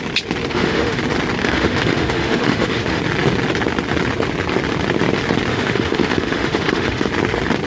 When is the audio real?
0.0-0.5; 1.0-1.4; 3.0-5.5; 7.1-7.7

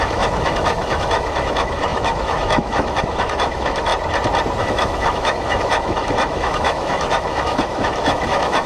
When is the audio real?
3.9-4.6

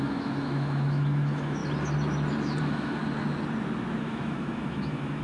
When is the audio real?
1.6-2.6; 3.0-4.0

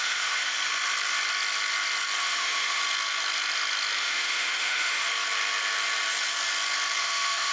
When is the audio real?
0.4-2.2; 2.8-4.0; 5.1-7.0